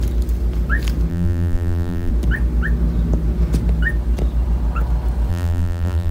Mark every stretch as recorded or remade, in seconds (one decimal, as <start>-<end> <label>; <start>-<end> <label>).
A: 0.0-1.1 recorded; 1.1-2.1 remade; 2.1-5.3 recorded; 5.3-6.1 remade